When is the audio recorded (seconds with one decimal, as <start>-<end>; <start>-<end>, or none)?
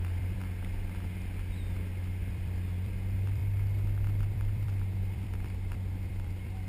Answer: 0.4-2.3; 3.4-4.2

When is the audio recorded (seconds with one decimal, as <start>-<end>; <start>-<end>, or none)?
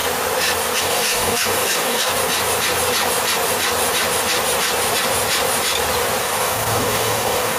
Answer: 0.0-0.8; 2.1-6.2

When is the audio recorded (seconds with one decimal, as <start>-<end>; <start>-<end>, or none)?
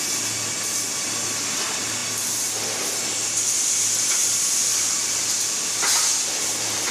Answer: 0.0-4.2; 5.5-6.9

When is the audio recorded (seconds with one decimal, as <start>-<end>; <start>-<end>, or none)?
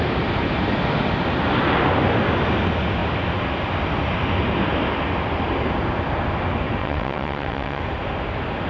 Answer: 0.0-6.8; 7.8-8.7